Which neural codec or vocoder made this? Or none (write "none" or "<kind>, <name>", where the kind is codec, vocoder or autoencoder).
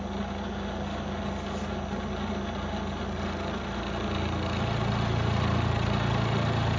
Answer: none